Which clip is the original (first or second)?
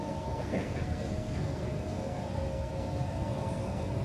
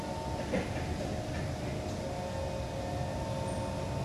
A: second